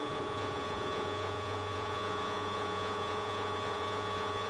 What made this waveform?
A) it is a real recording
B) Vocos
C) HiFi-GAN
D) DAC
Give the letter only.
B